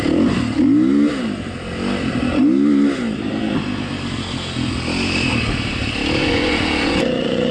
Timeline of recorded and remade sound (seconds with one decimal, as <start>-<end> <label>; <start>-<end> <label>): 0.0-6.2 recorded; 6.2-7.5 remade